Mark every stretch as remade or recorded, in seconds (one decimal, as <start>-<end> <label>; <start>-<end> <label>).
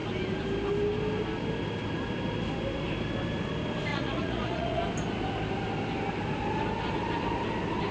0.0-3.9 recorded; 3.9-4.8 remade; 4.8-7.9 recorded